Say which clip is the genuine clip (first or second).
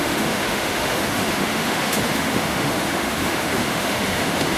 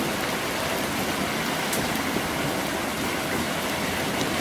second